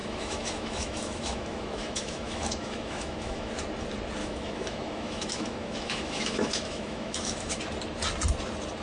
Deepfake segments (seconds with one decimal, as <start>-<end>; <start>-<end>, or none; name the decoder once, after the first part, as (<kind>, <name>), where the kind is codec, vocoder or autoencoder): 0.0-3.5 (autoencoder, DAC-VAE); 4.2-7.6